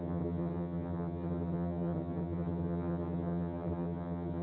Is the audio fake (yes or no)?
yes